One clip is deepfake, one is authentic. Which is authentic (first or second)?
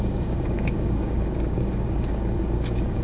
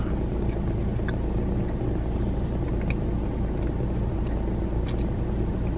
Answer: second